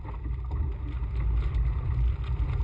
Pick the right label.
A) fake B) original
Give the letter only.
B